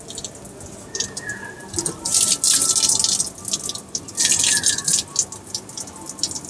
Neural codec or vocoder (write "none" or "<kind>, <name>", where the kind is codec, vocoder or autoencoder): none